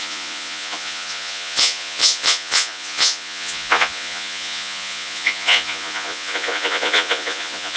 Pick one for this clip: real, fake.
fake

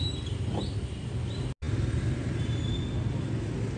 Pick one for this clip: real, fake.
real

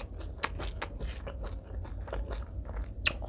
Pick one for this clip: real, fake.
real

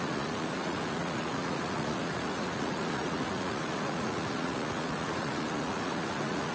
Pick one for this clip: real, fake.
fake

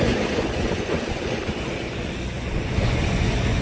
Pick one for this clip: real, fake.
fake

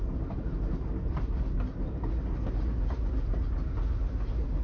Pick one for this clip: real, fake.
real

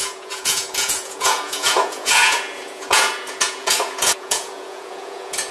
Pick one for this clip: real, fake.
fake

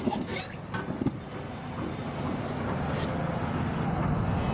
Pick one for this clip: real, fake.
real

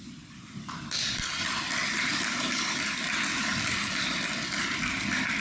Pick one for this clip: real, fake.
real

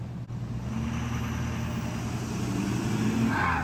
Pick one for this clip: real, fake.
real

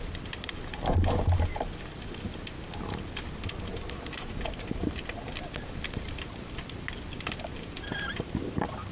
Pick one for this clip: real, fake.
real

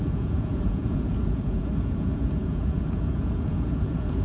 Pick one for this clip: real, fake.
fake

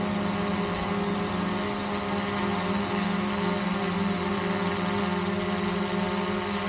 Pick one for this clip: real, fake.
real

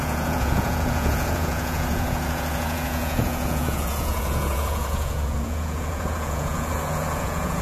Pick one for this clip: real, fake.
fake